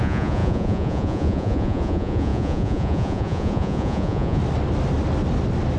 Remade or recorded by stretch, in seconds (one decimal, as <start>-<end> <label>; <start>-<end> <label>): 0.0-4.4 remade; 4.4-5.8 recorded